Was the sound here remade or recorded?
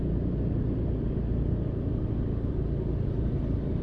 recorded